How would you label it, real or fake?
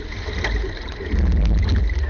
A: real